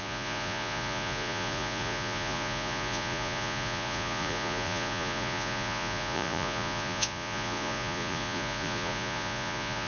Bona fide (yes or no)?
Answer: no